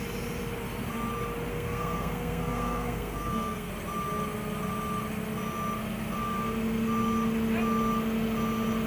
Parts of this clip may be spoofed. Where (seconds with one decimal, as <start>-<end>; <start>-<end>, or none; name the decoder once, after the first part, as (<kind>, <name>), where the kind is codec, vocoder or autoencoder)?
1.5-3.7 (codec, SNAC)